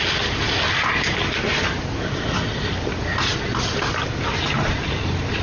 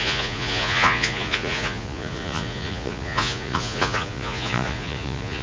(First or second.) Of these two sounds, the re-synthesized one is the second